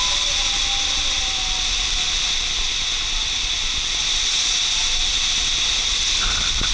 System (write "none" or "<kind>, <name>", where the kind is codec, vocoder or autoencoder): none